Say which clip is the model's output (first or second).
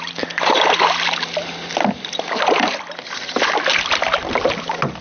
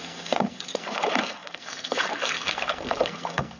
second